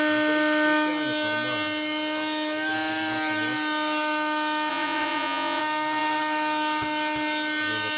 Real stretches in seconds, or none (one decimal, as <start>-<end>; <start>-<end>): 0.0-4.7; 5.6-8.0